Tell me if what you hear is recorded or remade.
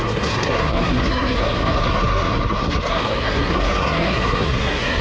remade